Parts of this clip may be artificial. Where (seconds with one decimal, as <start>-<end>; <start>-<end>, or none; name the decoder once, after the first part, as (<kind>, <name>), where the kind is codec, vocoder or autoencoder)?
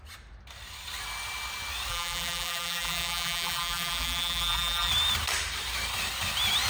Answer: 1.9-4.9 (vocoder, BigVGAN v2)